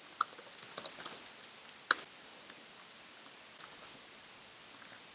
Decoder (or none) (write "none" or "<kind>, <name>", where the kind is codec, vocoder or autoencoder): none